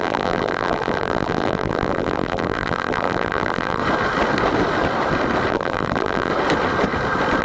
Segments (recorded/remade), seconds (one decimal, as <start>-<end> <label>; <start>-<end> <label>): 0.0-3.8 remade; 3.8-5.5 recorded; 5.5-6.3 remade; 6.3-7.4 recorded